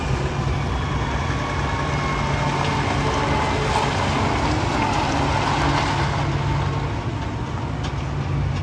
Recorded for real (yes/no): yes